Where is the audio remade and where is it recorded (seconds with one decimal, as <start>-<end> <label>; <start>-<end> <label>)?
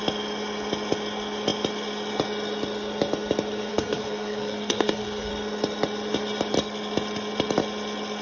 0.0-3.7 recorded; 3.7-5.3 remade; 5.3-8.2 recorded